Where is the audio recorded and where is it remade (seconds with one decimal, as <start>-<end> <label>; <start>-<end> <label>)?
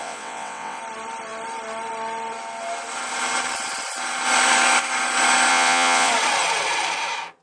0.0-0.8 remade; 0.8-5.5 recorded; 5.5-6.1 remade; 6.1-7.4 recorded